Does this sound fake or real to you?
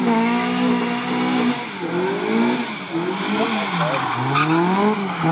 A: real